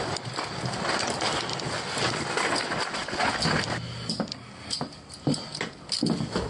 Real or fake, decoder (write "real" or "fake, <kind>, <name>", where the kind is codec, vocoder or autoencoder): real